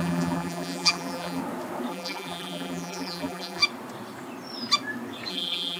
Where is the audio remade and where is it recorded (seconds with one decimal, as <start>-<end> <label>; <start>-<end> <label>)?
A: 0.0-1.4 remade; 1.4-1.9 recorded; 1.9-3.6 remade; 3.6-5.3 recorded; 5.3-5.8 remade